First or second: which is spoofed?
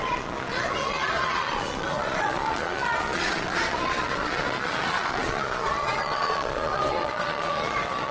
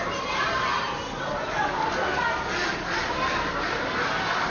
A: first